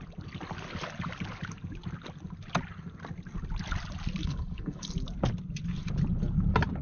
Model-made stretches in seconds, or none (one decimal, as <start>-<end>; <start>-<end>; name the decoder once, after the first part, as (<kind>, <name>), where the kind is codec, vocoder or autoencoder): 4.2-4.9 (codec, HILCodec)